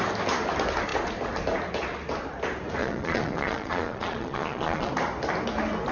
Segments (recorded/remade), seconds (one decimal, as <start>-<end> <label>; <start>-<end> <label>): 0.0-2.8 recorded; 2.8-4.9 remade; 4.9-5.9 recorded